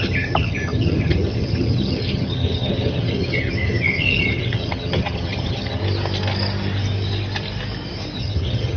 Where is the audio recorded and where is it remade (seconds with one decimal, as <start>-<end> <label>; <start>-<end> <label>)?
0.0-5.8 remade; 5.8-8.2 recorded; 8.2-8.8 remade